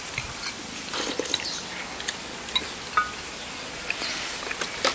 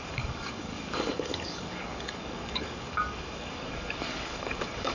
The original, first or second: first